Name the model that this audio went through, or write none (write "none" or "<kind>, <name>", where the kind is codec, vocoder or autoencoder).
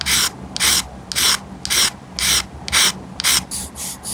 none